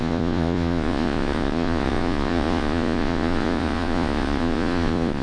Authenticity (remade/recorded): remade